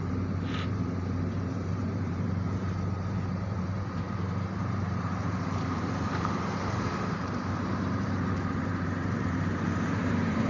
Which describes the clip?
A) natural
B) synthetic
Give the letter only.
B